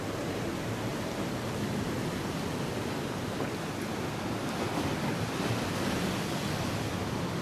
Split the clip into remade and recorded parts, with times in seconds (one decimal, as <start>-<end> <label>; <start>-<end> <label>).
0.0-7.4 recorded